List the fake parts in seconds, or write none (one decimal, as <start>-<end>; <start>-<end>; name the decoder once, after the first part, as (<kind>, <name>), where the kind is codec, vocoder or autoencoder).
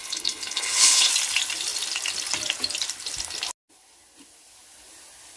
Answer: 0.0-1.1 (codec, HILCodec)